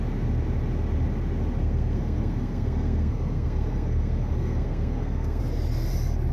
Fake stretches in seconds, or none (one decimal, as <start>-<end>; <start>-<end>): 1.6-5.4